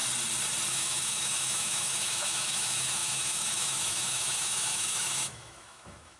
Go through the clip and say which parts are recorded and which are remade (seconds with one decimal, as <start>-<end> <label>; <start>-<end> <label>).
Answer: 0.0-0.7 recorded; 0.7-6.2 remade